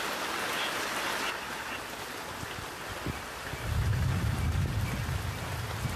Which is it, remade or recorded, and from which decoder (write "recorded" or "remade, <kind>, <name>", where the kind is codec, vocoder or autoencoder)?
recorded